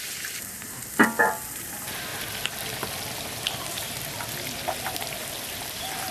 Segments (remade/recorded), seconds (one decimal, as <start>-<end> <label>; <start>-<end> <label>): 0.0-0.8 remade; 0.8-1.5 recorded; 1.5-2.1 remade; 2.1-5.5 recorded; 5.5-6.1 remade